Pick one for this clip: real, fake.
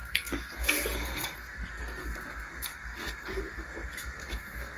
fake